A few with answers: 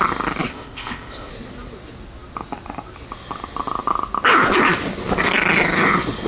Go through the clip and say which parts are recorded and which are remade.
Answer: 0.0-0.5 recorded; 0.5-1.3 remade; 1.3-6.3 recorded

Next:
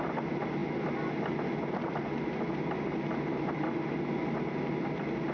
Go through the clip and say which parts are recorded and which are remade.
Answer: 0.0-5.3 recorded